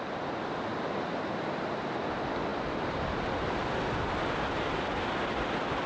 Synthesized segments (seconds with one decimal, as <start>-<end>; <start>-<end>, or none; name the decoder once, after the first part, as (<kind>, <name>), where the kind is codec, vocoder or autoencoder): none